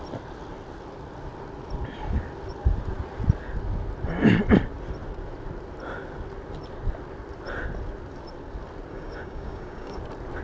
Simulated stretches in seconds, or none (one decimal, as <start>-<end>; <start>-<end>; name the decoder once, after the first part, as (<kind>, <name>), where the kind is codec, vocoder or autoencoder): 8.9-10.0 (codec, DAC)